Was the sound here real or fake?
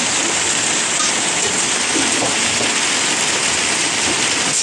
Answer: real